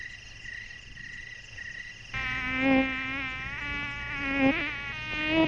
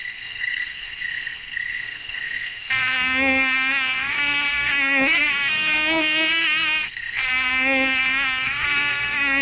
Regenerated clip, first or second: second